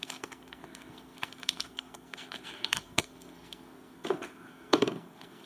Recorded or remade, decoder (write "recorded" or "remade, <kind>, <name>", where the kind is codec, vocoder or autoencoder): remade, codec, SNAC